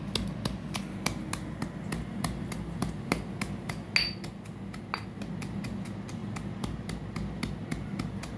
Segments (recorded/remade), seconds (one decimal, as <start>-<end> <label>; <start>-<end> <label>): 0.0-8.4 recorded